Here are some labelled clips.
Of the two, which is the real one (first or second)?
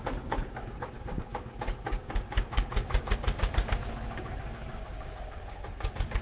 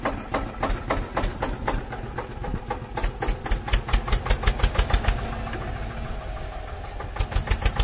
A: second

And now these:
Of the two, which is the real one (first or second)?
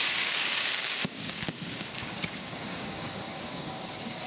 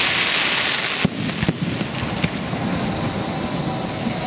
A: second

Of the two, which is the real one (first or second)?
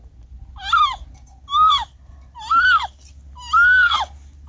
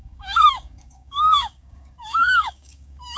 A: first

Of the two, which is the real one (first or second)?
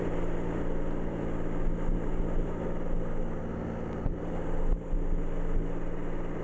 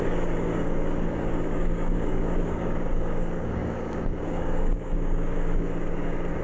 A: first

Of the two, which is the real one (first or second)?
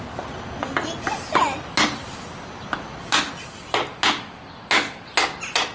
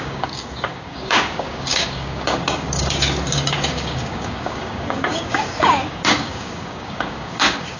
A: first